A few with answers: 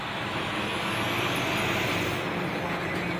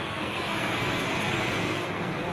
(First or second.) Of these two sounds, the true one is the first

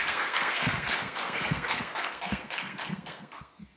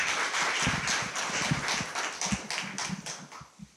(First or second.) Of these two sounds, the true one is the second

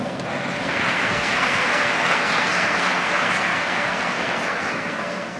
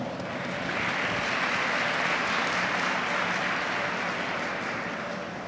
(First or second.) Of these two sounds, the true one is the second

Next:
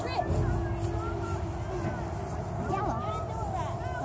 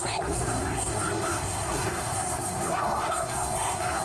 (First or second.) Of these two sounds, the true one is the first